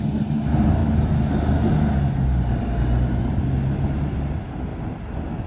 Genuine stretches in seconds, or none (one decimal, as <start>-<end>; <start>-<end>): 0.8-3.8; 4.7-5.5